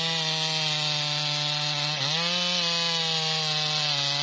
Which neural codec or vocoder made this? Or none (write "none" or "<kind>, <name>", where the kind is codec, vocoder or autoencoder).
none